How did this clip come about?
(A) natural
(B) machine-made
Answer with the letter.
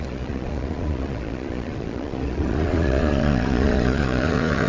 B